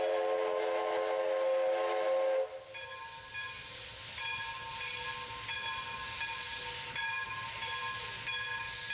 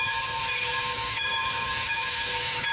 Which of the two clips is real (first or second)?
first